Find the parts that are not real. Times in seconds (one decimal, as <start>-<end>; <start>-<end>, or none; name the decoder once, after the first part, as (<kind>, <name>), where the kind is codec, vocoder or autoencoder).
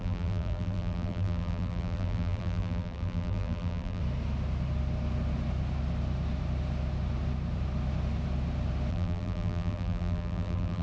0.0-4.0 (vocoder, BigVGAN v2); 8.9-10.8